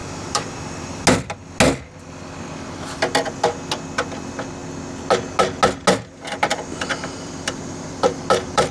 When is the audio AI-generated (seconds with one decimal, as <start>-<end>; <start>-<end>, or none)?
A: 0.0-1.0; 6.5-8.7